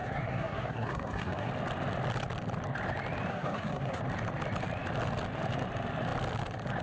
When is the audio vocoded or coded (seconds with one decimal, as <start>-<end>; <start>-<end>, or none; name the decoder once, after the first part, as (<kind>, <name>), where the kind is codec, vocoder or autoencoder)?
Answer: 0.0-1.5 (codec, SNAC); 3.3-4.0